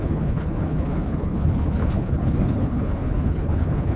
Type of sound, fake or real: fake